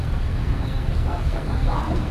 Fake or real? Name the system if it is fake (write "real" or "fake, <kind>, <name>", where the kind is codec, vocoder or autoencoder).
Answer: fake, codec, SNAC